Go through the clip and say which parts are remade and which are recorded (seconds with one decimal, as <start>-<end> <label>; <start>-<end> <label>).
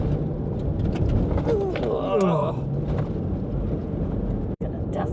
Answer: 0.0-3.8 recorded; 3.8-5.1 remade